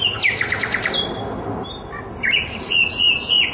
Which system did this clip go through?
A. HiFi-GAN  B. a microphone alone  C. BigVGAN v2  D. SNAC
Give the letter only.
B